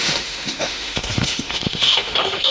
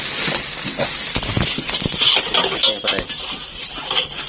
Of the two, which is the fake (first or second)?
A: first